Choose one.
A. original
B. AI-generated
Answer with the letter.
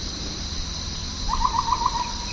A